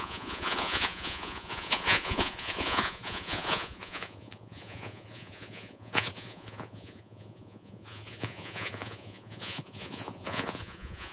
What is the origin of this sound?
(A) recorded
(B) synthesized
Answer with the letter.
B